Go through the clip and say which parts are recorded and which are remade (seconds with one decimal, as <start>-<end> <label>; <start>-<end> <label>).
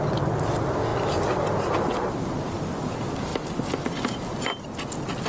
0.0-5.3 recorded